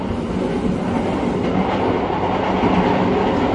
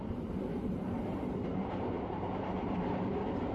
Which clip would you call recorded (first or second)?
first